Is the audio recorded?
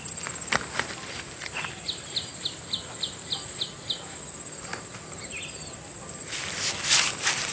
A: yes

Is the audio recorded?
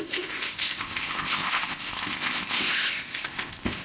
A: no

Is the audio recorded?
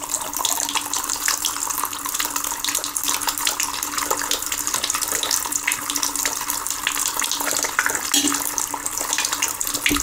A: yes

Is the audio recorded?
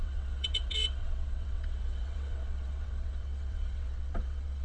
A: no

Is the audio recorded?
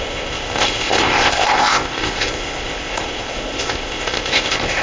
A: no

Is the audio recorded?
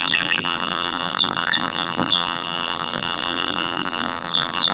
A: no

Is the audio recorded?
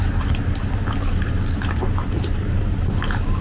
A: yes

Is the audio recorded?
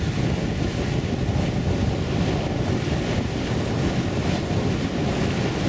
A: yes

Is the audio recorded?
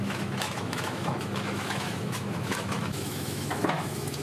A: no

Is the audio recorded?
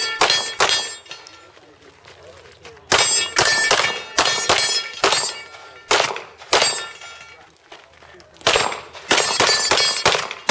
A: yes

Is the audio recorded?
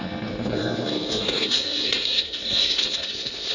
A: no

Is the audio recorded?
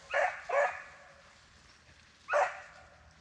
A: yes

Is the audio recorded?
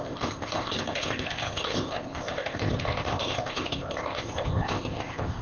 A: no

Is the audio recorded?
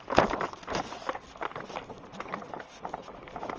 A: yes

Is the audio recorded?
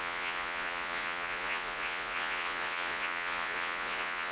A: no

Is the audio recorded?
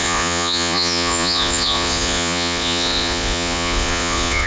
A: no